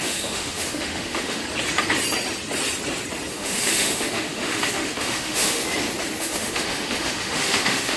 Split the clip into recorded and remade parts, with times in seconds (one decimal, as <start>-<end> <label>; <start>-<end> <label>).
0.0-1.4 remade; 1.4-3.3 recorded; 3.3-5.6 remade; 5.6-6.2 recorded; 6.2-8.0 remade